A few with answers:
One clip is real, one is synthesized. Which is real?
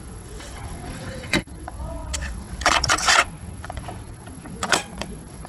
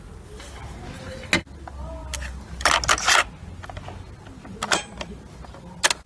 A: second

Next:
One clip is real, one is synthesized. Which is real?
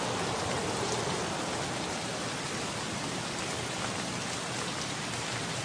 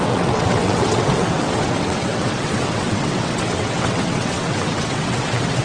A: first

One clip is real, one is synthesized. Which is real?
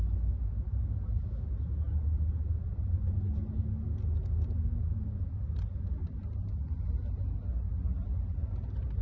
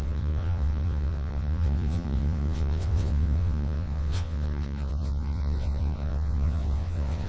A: first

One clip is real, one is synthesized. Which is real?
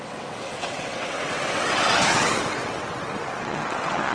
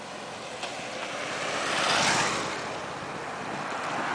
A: second